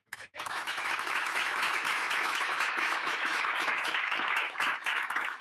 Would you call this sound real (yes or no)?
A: no